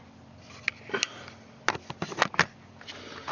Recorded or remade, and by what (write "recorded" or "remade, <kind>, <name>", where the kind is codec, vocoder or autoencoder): recorded